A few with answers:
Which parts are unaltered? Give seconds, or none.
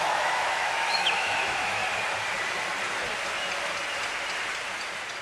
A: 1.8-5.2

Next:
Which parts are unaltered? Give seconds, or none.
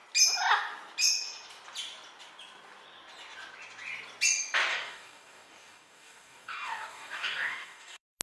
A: 0.0-4.7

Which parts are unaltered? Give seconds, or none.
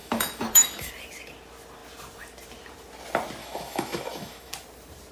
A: 0.9-3.4; 4.5-5.1